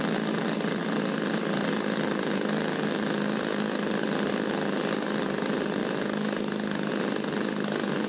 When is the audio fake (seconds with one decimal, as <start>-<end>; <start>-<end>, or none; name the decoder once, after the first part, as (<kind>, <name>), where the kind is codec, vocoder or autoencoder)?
none